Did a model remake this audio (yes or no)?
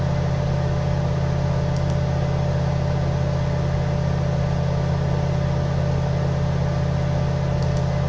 no